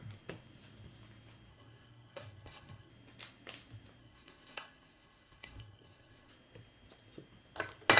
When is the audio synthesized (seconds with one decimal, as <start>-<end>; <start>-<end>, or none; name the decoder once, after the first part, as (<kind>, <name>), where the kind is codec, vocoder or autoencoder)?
1.5-2.9 (codec, SNAC); 4.0-6.3